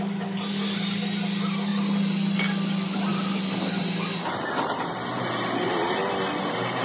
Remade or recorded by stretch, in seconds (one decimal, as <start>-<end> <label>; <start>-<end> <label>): 0.0-6.8 recorded